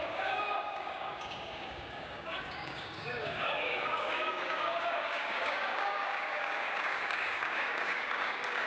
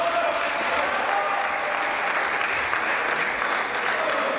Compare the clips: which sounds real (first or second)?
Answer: second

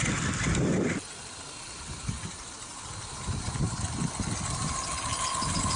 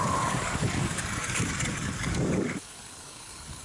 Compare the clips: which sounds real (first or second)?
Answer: first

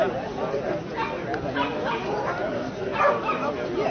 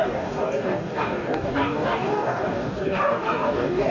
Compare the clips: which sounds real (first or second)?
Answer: first